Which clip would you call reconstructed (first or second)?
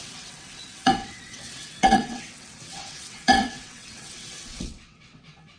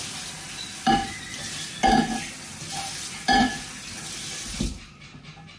first